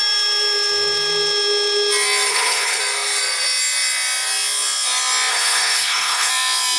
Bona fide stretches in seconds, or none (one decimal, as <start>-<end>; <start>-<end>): 0.0-2.3; 2.8-5.3; 6.3-6.8